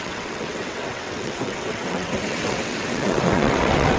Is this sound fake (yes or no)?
yes